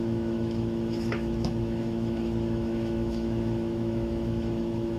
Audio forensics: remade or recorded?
remade